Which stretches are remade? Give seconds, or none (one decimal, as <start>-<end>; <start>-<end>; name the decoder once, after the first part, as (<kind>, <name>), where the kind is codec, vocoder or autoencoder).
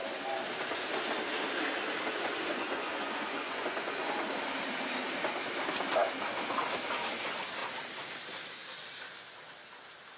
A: 2.1-4.1 (vocoder, Vocos)